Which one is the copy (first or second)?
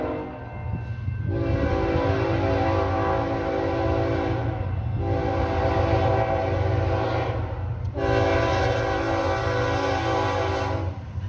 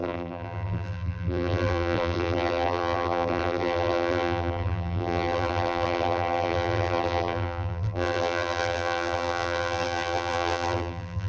second